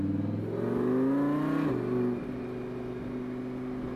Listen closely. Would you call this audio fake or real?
real